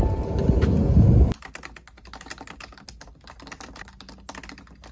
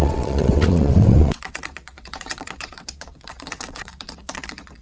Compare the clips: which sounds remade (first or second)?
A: second